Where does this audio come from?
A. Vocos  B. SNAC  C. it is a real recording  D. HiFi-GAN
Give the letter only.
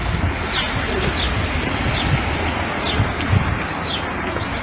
C